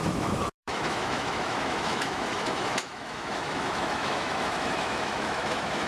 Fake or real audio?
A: fake